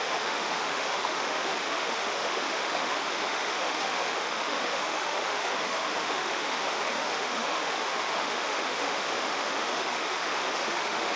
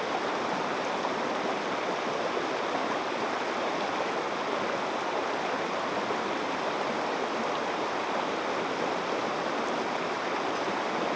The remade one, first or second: first